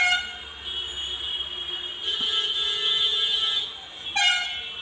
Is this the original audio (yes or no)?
yes